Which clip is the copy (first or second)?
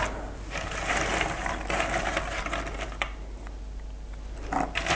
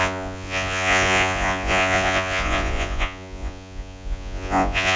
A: second